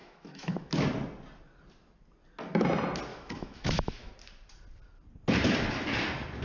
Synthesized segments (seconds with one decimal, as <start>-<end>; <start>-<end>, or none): 0.0-0.7; 3.1-4.1